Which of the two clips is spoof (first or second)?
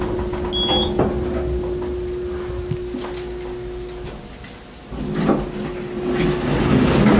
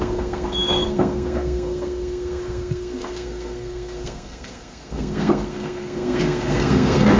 second